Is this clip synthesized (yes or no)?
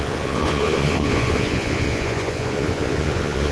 yes